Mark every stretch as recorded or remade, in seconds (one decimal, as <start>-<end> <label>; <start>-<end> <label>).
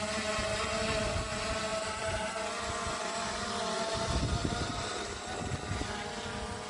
0.0-1.7 recorded; 1.7-2.3 remade; 2.3-4.4 recorded; 4.4-5.3 remade; 5.3-6.7 recorded